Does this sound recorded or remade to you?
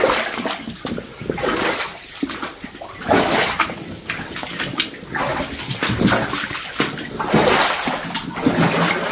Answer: recorded